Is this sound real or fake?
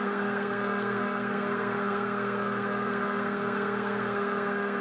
fake